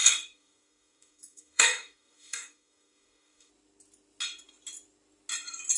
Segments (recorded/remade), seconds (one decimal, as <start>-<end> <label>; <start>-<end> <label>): 0.0-3.5 remade; 3.5-5.8 recorded